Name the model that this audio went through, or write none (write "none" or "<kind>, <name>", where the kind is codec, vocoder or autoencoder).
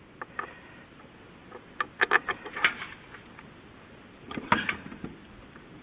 none